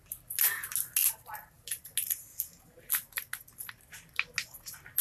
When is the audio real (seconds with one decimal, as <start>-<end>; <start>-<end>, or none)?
0.0-5.0